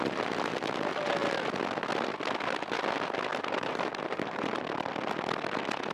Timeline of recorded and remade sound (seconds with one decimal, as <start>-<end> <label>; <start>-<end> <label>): 0.0-3.3 recorded; 3.3-4.6 remade; 4.6-5.9 recorded